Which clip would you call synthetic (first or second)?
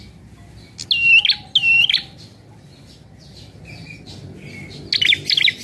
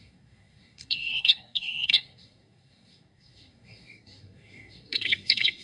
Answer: second